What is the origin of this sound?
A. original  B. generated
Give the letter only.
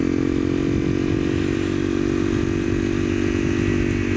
A